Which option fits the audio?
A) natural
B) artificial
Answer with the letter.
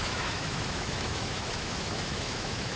B